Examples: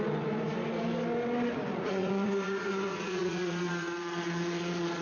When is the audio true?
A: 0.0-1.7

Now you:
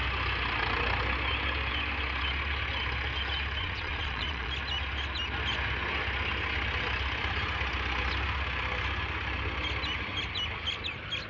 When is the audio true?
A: 0.0-3.6; 4.5-11.3

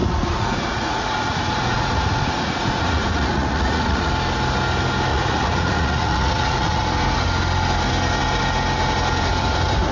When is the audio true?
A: 4.1-5.1; 6.8-9.9

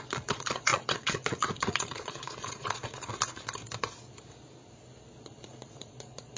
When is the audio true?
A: 3.1-5.2

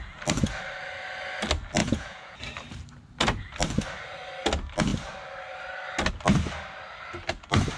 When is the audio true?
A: 0.0-1.8; 2.4-7.8

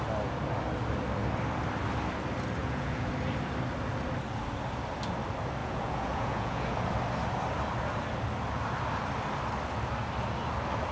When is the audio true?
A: 0.0-2.6; 3.1-5.6; 6.8-10.9

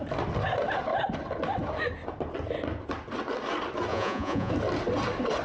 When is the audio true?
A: 0.0-3.9; 4.5-5.4

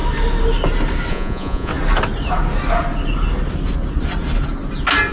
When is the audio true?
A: 0.0-1.1; 1.7-5.1